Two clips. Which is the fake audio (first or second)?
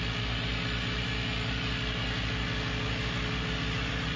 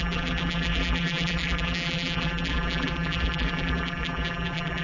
second